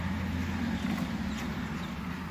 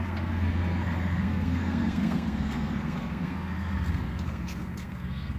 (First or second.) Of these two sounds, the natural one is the first